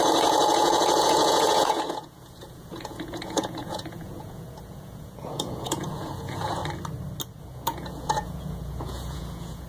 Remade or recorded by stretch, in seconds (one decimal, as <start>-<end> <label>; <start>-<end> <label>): 0.0-6.6 remade; 6.6-7.4 recorded; 7.4-9.7 remade